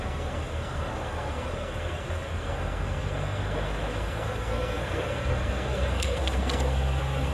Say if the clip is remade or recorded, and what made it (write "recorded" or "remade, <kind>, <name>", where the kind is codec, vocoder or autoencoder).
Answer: remade, codec, SNAC